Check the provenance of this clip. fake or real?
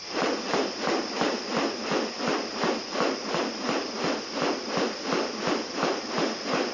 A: real